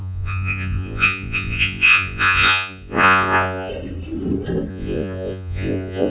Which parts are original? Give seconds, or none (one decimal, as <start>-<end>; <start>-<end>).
3.7-4.7